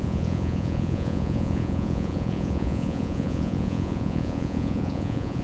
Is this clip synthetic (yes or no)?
yes